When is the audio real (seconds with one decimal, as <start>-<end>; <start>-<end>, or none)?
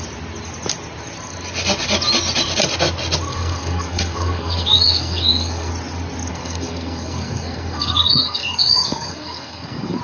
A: 0.0-3.3; 5.7-6.3